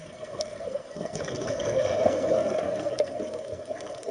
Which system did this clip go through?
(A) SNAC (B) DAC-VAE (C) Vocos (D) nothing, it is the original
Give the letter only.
A